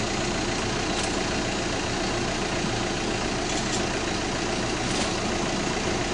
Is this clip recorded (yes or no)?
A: yes